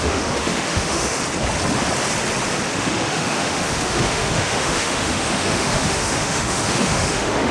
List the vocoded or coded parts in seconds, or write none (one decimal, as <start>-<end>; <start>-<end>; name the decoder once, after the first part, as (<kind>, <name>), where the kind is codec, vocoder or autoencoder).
0.0-1.2 (autoencoder, DAC-VAE); 2.7-7.5